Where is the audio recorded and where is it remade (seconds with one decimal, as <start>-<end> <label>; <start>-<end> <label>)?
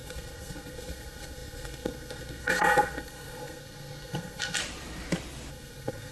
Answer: 0.0-4.6 remade; 4.6-5.5 recorded; 5.5-6.1 remade